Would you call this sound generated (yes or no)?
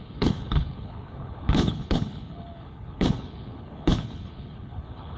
yes